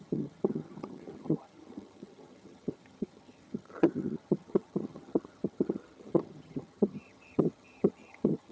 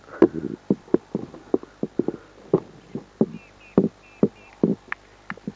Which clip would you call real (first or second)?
second